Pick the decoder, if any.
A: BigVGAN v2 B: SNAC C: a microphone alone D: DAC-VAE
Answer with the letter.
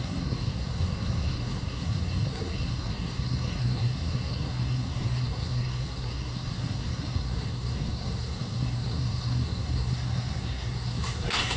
B